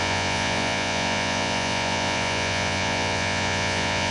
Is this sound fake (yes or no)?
yes